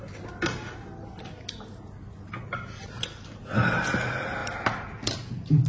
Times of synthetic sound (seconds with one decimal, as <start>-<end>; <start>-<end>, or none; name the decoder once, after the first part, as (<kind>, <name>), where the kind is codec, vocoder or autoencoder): none